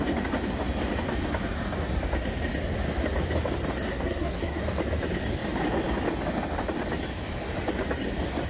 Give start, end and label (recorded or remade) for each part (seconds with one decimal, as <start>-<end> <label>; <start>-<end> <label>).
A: 0.0-3.9 recorded; 3.9-4.6 remade; 4.6-8.5 recorded